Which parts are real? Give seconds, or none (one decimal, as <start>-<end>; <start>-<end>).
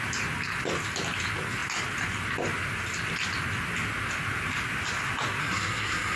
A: 0.0-5.4